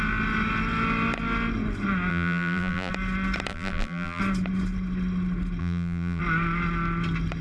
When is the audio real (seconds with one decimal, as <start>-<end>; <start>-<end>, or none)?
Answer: 0.0-2.1; 2.9-3.5; 4.2-5.6; 6.2-7.4